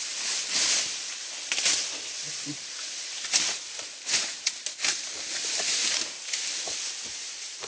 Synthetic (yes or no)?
no